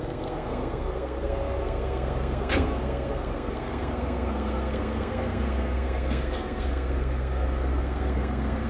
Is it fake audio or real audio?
fake